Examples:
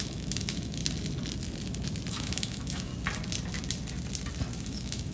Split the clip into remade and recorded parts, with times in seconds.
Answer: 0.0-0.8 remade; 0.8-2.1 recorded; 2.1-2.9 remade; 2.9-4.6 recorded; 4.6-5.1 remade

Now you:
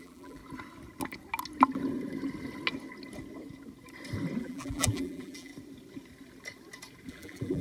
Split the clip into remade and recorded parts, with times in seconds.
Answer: 0.0-0.4 remade; 0.4-4.4 recorded; 4.4-5.5 remade; 5.5-7.1 recorded; 7.1-7.6 remade

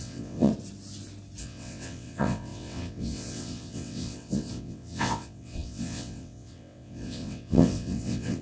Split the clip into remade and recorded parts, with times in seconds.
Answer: 0.0-0.5 remade; 0.5-1.4 recorded; 1.4-8.4 remade

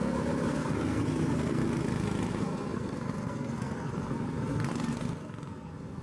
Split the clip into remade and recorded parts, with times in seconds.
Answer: 0.0-1.6 remade; 1.6-2.3 recorded; 2.3-6.0 remade

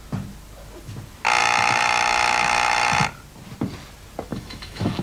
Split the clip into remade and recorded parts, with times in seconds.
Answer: 0.0-1.4 recorded; 1.4-3.0 remade; 3.0-4.3 recorded; 4.3-5.0 remade

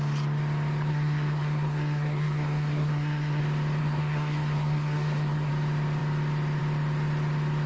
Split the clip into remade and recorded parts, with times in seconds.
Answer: 0.0-0.9 recorded; 0.9-3.4 remade; 3.4-3.8 recorded; 3.8-5.5 remade; 5.5-7.7 recorded

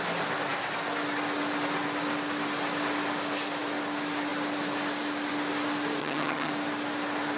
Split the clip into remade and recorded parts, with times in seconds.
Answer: 0.0-6.0 recorded; 6.0-6.5 remade; 6.5-7.4 recorded

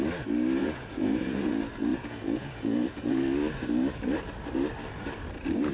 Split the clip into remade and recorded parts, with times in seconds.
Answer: 0.0-0.6 recorded; 0.6-1.5 remade; 1.5-1.9 recorded; 1.9-3.2 remade; 3.2-5.7 recorded